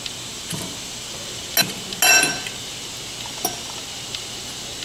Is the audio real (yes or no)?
yes